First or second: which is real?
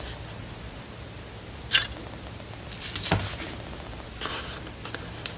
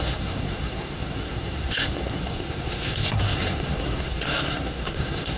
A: first